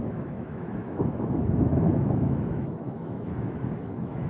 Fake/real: fake